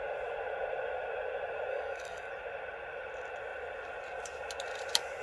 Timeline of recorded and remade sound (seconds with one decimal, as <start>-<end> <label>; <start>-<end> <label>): 0.0-1.7 recorded; 1.7-2.3 remade; 2.3-5.2 recorded